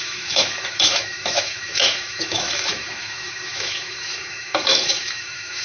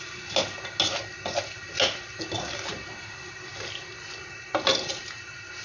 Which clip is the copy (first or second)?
first